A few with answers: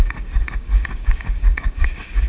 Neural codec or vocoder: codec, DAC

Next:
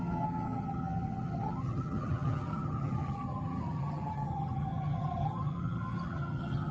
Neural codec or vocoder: vocoder, HiFi-GAN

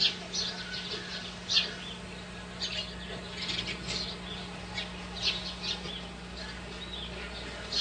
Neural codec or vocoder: none